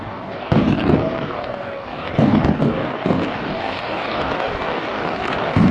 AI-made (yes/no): yes